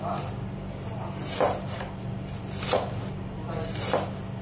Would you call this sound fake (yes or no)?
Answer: no